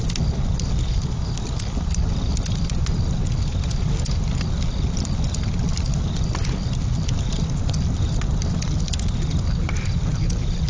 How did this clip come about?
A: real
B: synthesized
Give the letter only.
A